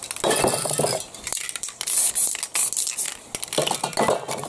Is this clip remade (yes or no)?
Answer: no